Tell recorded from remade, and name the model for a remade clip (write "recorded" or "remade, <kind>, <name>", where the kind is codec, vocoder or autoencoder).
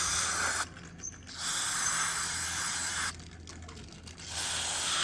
recorded